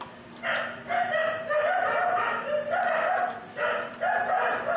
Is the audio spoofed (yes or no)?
no